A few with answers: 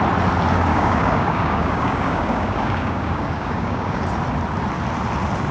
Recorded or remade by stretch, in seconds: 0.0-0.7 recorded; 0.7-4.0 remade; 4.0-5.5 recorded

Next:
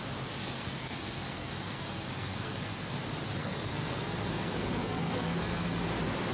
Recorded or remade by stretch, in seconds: 0.0-0.4 recorded; 0.4-2.9 remade; 2.9-3.4 recorded; 3.4-5.8 remade; 5.8-6.3 recorded

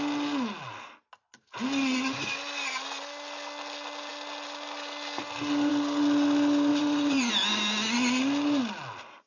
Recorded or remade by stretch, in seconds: 0.0-6.7 recorded; 6.7-7.3 remade; 7.3-9.3 recorded